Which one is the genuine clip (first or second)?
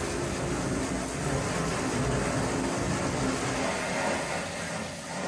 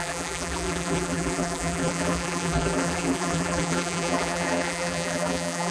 first